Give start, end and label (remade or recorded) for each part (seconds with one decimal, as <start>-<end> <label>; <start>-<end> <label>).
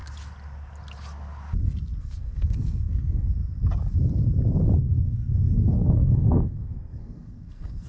0.0-2.0 recorded; 2.0-3.4 remade; 3.4-4.8 recorded; 4.8-7.9 remade